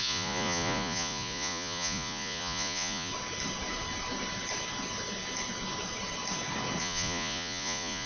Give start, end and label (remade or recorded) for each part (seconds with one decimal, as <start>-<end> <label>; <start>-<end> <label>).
0.0-3.1 remade; 3.1-6.8 recorded; 6.8-8.1 remade